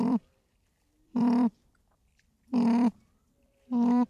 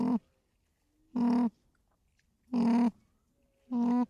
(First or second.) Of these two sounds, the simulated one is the first